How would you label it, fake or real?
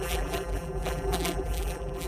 fake